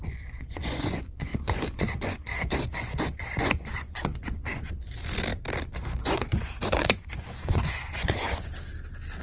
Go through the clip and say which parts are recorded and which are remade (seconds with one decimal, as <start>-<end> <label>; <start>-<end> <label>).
0.0-5.0 remade; 5.0-5.8 recorded; 5.8-8.5 remade; 8.5-9.2 recorded